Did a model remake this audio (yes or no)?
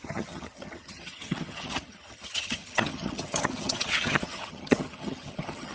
yes